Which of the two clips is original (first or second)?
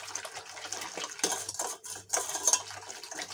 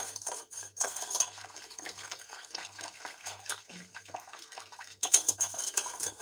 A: first